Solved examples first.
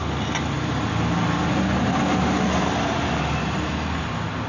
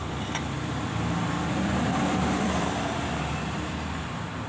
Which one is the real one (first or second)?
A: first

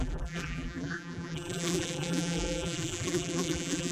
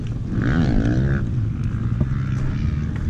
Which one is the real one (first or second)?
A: second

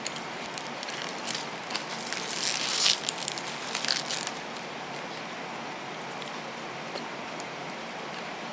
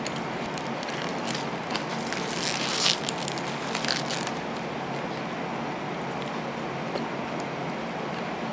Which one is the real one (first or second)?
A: second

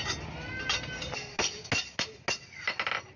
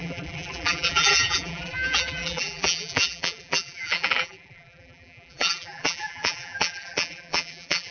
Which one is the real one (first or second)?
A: first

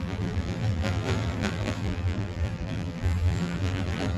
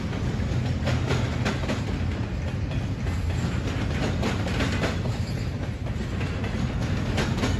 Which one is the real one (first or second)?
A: second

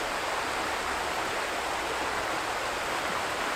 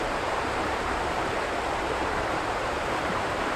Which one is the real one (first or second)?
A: first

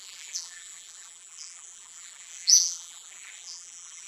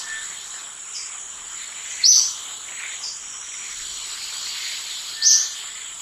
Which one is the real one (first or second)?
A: second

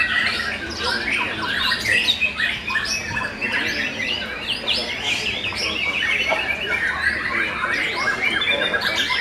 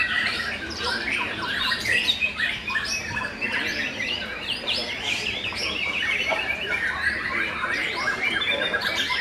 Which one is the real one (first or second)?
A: first